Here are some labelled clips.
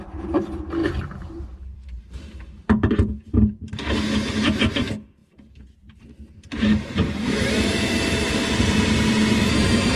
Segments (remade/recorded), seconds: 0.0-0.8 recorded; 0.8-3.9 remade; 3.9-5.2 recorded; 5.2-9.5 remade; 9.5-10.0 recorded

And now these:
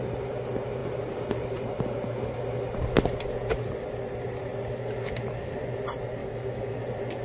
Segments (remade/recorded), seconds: 0.0-6.2 recorded; 6.2-6.8 remade; 6.8-7.2 recorded

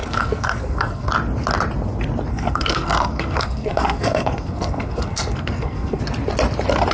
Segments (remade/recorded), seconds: 0.0-1.1 remade; 1.1-2.3 recorded; 2.3-6.0 remade; 6.0-6.9 recorded

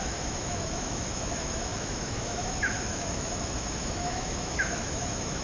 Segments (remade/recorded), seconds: 0.0-5.4 remade

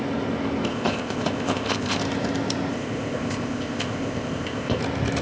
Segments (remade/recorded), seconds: 0.0-0.7 recorded; 0.7-2.0 remade; 2.0-2.7 recorded; 2.7-4.8 remade; 4.8-5.2 recorded